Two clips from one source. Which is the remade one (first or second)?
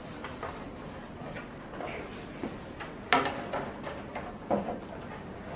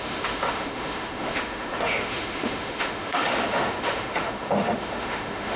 second